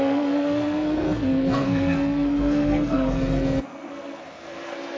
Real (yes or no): no